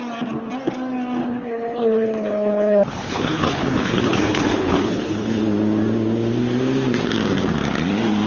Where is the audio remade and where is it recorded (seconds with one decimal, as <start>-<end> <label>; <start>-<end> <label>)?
0.0-1.2 recorded; 1.2-5.4 remade; 5.4-8.3 recorded